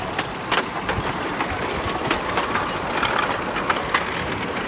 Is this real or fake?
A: real